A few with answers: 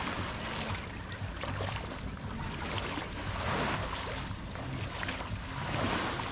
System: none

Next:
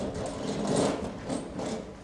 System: none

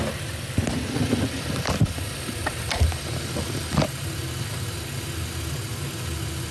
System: none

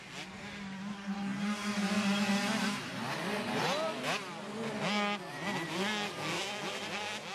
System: none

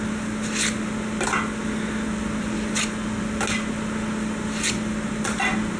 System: none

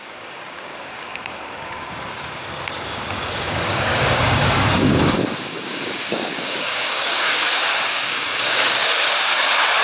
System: codec, DAC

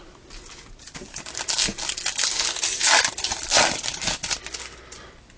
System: none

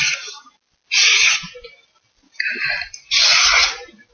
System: none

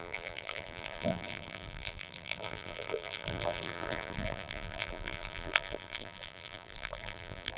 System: vocoder, BigVGAN v2